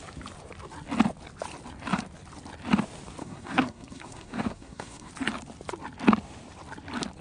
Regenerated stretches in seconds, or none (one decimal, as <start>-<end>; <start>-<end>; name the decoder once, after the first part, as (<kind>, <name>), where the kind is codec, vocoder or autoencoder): 3.2-5.1 (codec, SNAC)